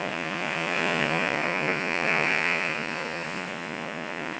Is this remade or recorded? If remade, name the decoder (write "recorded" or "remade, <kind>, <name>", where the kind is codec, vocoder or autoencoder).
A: remade, vocoder, Vocos